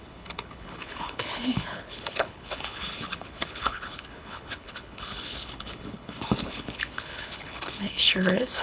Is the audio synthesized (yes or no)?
yes